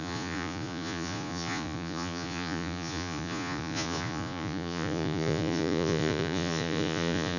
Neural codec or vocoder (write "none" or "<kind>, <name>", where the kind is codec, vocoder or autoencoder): vocoder, Vocos